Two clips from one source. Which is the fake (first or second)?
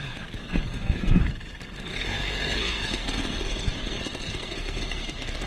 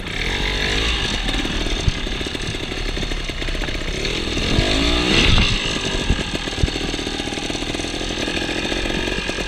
first